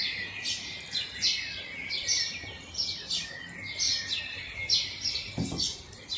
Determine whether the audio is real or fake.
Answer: real